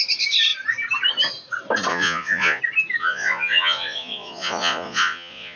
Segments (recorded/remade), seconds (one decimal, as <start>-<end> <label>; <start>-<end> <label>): 0.0-1.9 recorded; 1.9-2.6 remade; 2.6-3.0 recorded; 3.0-5.6 remade